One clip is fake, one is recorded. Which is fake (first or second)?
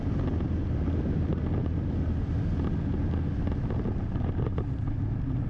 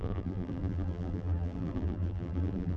second